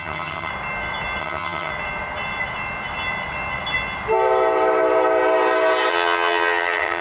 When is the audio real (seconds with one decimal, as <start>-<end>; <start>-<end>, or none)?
0.5-1.2; 1.7-5.9